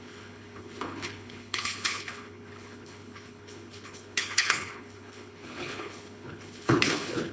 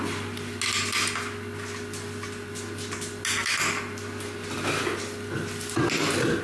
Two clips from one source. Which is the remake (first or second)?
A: first